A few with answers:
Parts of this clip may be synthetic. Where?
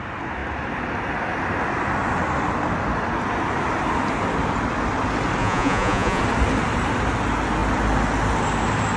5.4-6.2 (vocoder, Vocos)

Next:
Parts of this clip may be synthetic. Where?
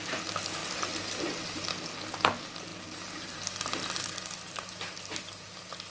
none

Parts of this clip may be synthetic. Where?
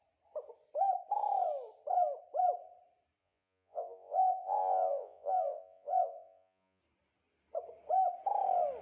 3.2-6.8 (vocoder, Vocos)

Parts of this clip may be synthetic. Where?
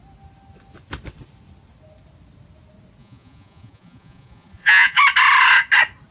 3.0-5.0 (vocoder, Vocos)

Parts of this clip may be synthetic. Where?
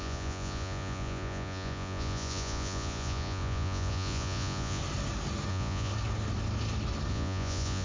0.0-4.8 (vocoder, Vocos); 5.5-5.9; 7.1-7.8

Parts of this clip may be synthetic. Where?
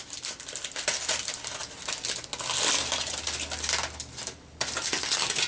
none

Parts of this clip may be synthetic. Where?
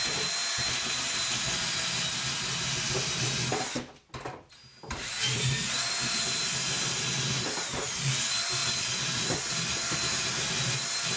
none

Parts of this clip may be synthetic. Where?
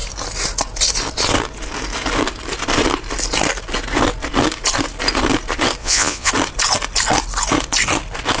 5.8-6.3 (vocoder, Vocos)